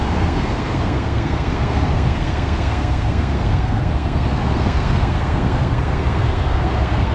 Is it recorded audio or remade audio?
remade